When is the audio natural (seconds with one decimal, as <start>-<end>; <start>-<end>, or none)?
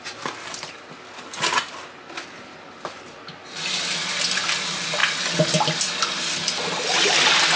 0.0-7.6